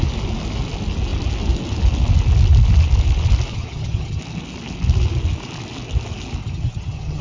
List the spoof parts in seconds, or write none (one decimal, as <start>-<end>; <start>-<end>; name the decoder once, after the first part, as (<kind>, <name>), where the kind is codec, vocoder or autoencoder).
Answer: 3.5-4.2 (vocoder, HiFi-GAN); 6.4-7.2